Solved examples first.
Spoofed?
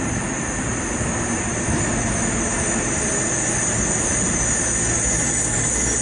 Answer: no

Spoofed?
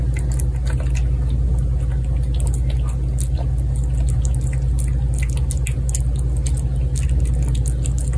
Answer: no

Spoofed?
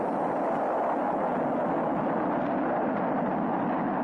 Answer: no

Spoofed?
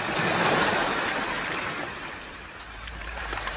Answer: yes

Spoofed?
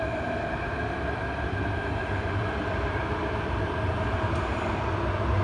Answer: yes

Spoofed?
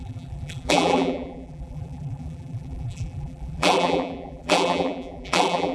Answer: yes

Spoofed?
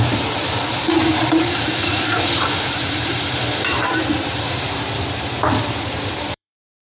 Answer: yes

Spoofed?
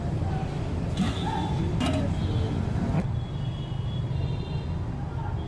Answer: no